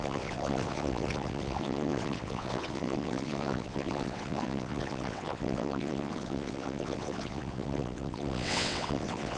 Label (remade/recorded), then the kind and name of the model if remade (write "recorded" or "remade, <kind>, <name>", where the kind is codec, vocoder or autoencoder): remade, vocoder, WaveNeXt